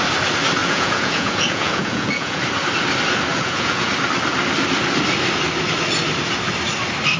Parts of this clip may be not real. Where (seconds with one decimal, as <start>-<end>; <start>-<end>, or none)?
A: 0.6-2.4; 3.3-3.9

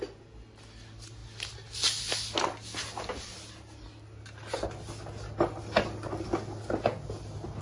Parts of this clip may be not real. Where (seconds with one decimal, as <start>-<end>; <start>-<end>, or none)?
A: none

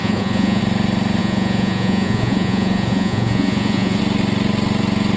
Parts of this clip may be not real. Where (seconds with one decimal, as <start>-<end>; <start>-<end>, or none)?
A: 0.0-0.6; 1.2-4.0

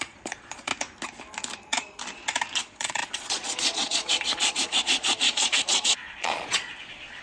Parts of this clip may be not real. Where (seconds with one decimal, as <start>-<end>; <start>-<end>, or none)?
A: 0.0-0.7; 2.6-7.2